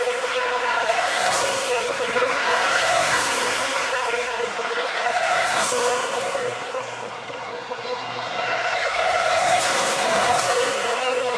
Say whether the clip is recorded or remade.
remade